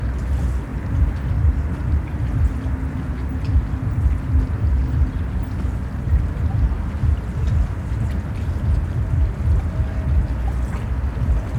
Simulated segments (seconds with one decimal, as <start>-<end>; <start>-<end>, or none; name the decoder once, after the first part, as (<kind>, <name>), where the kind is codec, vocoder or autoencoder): 0.7-1.3 (vocoder, BigVGAN v2)